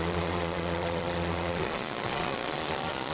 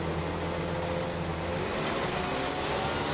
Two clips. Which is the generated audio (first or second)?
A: first